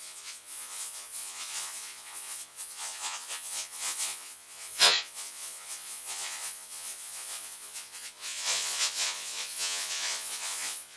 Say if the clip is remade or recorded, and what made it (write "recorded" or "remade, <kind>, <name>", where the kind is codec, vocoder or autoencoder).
remade, vocoder, Vocos